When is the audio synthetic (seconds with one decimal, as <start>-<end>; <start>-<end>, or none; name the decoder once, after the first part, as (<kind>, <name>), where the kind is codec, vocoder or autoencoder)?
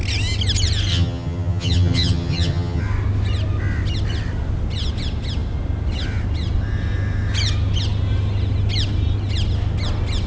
0.9-2.8 (vocoder, HiFi-GAN)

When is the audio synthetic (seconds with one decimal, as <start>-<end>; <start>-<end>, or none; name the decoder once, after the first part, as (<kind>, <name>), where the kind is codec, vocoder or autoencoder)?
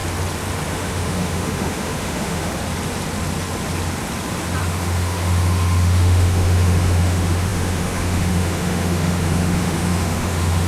0.7-2.5 (autoencoder, DAC-VAE); 4.6-10.7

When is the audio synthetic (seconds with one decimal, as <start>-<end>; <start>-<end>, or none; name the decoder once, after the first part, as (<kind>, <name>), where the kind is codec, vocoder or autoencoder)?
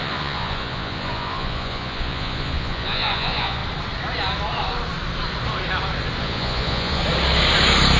0.0-3.6 (vocoder, Vocos); 6.2-7.0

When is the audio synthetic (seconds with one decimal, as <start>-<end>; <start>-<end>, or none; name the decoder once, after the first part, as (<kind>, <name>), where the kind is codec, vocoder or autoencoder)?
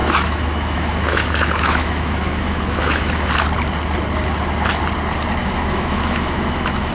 0.0-3.3 (autoencoder, DAC-VAE); 5.4-6.9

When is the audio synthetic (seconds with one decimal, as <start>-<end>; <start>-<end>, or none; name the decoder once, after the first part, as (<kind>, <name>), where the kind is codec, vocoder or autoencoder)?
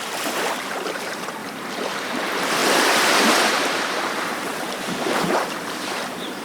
0.0-6.4 (vocoder, BigVGAN v2)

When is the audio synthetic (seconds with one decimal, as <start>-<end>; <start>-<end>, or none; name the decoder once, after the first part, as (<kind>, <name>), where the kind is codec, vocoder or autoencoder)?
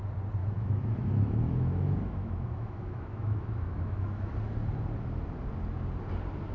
0.4-4.3 (autoencoder, DAC-VAE)